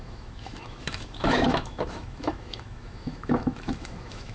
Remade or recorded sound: remade